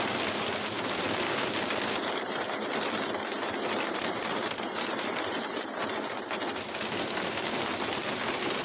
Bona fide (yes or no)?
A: no